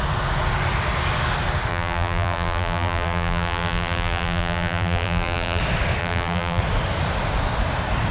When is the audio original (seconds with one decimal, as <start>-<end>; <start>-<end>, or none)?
0.0-1.7; 5.6-6.0; 6.6-8.1